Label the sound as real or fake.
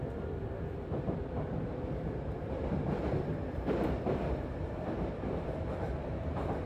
fake